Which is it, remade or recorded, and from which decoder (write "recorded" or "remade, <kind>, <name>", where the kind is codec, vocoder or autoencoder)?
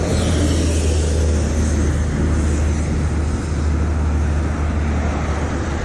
recorded